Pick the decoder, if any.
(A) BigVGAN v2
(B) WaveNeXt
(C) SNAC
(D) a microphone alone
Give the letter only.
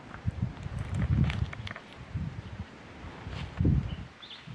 A